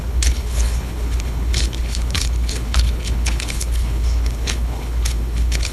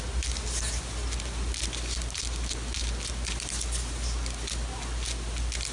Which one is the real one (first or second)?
second